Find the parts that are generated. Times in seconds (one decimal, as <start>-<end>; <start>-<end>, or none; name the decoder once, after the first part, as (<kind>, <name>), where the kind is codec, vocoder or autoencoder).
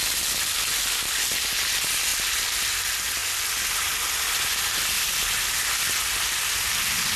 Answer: none